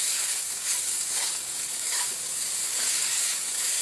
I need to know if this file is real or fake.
fake